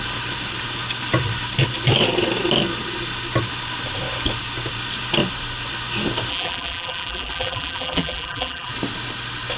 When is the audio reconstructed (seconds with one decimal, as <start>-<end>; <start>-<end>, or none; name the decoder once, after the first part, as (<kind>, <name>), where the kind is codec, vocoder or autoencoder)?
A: 6.3-8.7 (vocoder, BigVGAN v2)